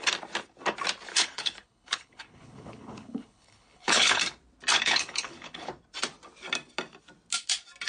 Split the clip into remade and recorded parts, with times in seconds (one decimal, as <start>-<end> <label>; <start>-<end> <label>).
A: 0.0-1.1 recorded; 1.1-4.2 remade; 4.2-4.7 recorded; 4.7-5.7 remade; 5.7-7.9 recorded